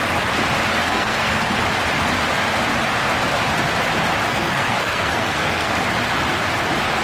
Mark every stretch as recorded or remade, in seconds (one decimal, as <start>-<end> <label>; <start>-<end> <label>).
0.0-0.8 recorded; 0.8-1.5 remade; 1.5-4.3 recorded; 4.3-5.7 remade; 5.7-7.0 recorded